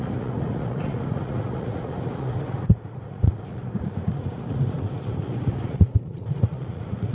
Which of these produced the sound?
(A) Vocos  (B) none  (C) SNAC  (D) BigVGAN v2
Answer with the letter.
A